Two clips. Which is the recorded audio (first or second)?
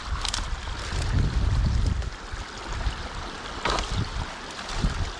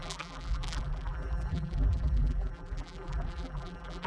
first